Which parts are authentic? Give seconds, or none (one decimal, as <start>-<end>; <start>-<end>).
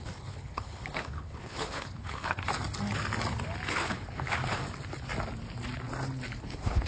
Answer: 2.5-3.7; 4.6-6.4